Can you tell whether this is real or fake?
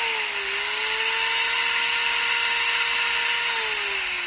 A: real